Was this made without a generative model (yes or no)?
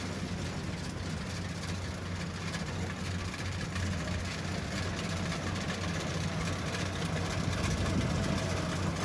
yes